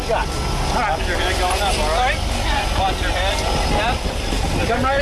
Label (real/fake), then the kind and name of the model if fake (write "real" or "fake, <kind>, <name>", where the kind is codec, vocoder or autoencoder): real